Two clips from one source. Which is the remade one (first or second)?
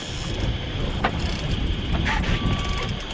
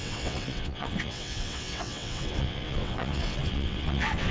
second